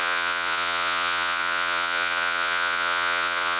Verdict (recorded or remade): remade